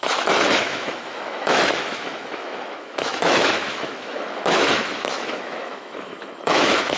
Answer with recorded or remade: remade